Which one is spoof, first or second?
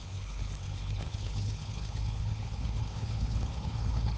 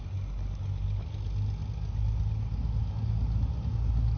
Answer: first